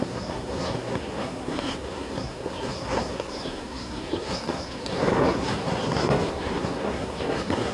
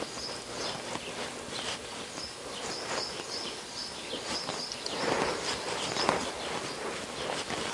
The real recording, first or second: second